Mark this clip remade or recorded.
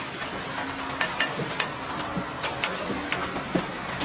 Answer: recorded